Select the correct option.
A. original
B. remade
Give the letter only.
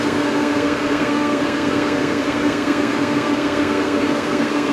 B